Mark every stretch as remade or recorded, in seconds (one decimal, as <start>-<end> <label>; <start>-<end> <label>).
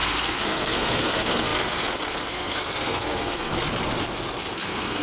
0.0-3.5 remade; 3.5-4.5 recorded; 4.5-5.0 remade